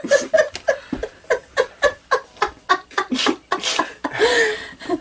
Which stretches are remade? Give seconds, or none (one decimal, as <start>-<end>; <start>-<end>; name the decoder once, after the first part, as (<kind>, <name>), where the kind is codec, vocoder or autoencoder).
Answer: 1.0-3.5 (vocoder, BigVGAN v2)